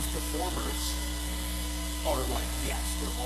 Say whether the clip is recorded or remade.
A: remade